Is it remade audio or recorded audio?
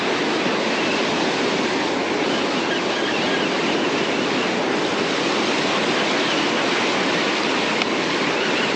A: recorded